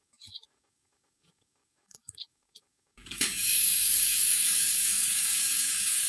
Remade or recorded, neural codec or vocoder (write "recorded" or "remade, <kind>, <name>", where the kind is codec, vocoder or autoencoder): remade, codec, DAC